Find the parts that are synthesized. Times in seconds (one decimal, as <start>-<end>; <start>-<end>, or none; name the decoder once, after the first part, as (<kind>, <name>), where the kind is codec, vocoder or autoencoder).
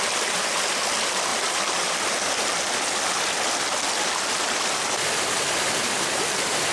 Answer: none